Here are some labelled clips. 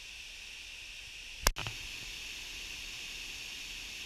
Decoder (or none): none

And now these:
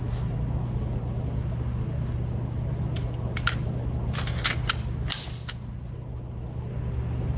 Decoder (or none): none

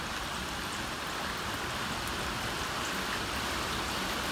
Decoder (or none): none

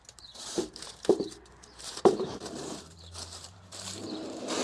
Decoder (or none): vocoder, BigVGAN v2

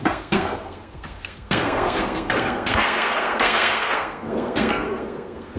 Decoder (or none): codec, SNAC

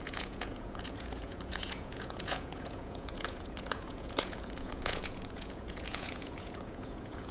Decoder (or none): vocoder, Vocos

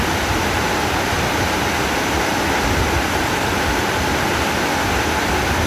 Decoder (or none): none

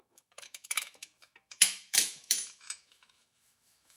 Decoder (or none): autoencoder, DAC-VAE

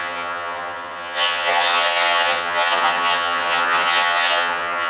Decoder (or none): vocoder, HiFi-GAN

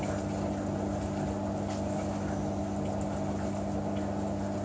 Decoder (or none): none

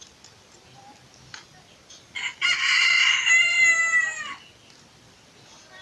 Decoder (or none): none